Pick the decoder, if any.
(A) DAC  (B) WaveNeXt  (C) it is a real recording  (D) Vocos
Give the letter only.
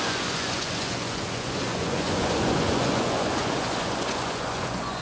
D